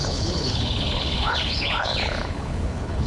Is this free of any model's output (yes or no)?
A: no